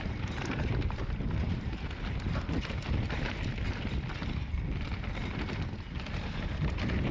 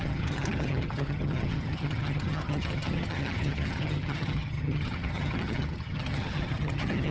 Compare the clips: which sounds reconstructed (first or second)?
second